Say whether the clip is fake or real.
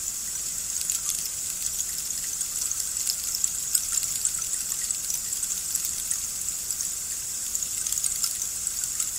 real